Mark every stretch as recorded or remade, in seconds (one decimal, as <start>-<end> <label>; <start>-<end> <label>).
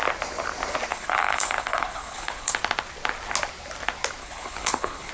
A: 0.0-0.9 recorded; 0.9-2.5 remade; 2.5-4.2 recorded; 4.2-5.1 remade